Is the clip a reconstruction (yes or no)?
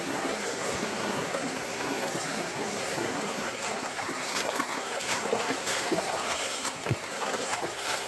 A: yes